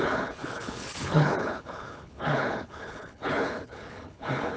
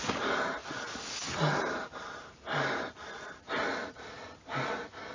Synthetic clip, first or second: first